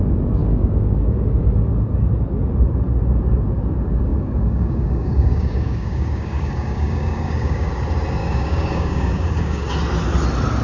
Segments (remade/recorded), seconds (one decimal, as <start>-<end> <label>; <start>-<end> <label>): 0.0-0.4 recorded; 0.4-1.4 remade; 1.4-4.1 recorded; 4.1-7.7 remade; 7.7-8.2 recorded; 8.2-9.7 remade; 9.7-10.6 recorded